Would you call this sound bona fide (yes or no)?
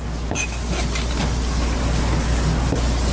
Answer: yes